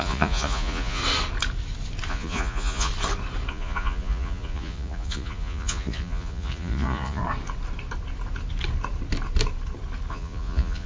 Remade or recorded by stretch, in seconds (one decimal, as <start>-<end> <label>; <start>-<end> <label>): 0.0-1.0 remade; 1.0-2.1 recorded; 2.1-2.9 remade; 2.9-3.5 recorded; 3.5-7.2 remade; 7.2-10.1 recorded; 10.1-10.9 remade